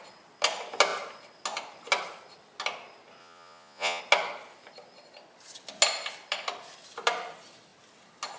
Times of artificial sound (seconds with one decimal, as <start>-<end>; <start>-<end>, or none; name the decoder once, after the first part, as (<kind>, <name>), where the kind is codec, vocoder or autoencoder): 3.2-4.0 (vocoder, Vocos)